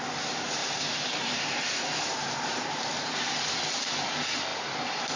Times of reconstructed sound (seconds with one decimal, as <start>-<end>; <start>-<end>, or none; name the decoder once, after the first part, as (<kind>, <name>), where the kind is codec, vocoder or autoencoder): 0.6-3.7 (vocoder, BigVGAN v2)